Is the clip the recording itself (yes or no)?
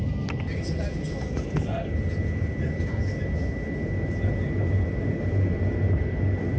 yes